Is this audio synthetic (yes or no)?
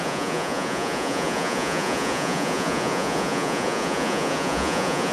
yes